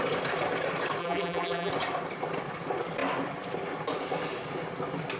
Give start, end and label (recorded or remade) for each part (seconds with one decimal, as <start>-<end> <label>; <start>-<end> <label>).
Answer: 0.0-1.0 recorded; 1.0-1.7 remade; 1.7-5.2 recorded